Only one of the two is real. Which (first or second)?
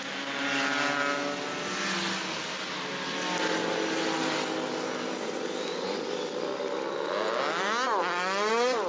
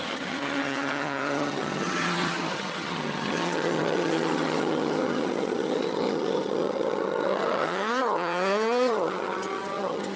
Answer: first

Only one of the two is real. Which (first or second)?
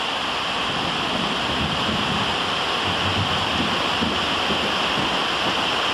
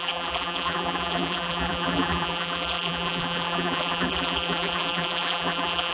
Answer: first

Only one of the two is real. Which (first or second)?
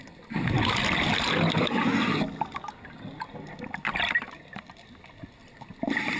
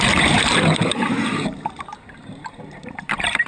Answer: first